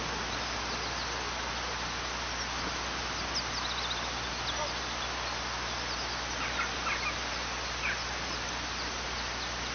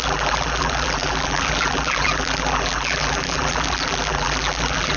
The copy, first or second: second